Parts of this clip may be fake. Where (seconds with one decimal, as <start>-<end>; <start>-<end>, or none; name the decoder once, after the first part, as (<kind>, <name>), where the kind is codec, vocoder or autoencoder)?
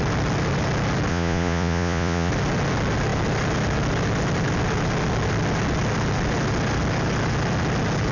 1.1-2.3 (vocoder, Vocos)